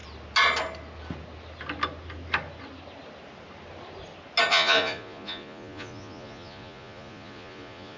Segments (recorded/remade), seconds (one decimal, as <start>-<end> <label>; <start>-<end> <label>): 0.0-4.5 recorded; 4.5-8.0 remade